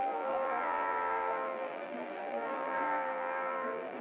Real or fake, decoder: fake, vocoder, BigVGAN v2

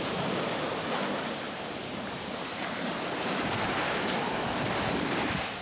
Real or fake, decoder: fake, vocoder, BigVGAN v2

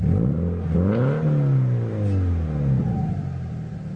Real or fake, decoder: real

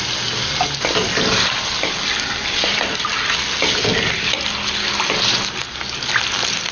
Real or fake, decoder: real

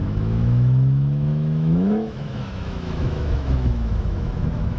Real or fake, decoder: fake, autoencoder, DAC-VAE